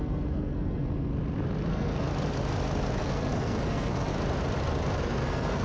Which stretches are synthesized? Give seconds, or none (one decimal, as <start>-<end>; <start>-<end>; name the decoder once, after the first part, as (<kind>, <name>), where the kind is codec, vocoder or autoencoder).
0.0-1.1 (codec, SNAC); 1.7-2.1; 3.0-4.1; 5.0-5.6